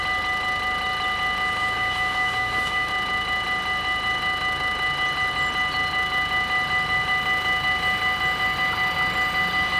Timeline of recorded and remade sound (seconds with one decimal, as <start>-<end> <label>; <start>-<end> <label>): 0.0-1.6 recorded; 1.6-2.9 remade; 2.9-9.8 recorded